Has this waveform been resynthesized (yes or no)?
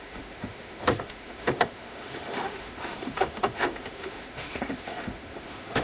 yes